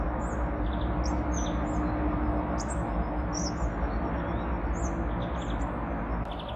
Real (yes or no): yes